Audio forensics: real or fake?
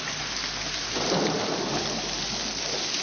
real